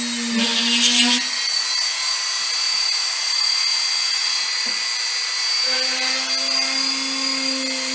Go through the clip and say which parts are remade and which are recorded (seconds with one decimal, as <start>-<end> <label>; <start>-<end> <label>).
0.0-7.9 recorded